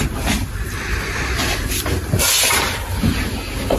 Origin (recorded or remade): recorded